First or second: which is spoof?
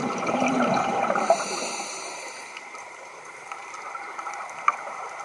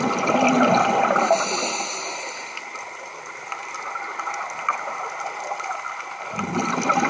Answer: first